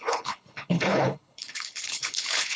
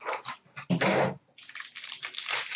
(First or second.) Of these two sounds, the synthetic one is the first